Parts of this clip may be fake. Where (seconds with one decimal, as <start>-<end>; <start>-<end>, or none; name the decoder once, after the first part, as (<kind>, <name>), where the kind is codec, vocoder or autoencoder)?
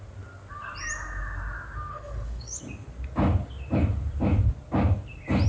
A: 1.9-2.6 (codec, HILCodec)